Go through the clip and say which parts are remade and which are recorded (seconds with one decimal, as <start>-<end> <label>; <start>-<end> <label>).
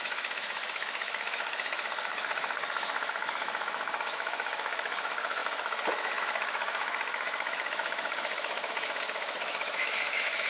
0.0-10.5 remade